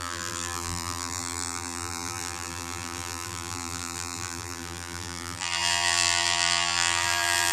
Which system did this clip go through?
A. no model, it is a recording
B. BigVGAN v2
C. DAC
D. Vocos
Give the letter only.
B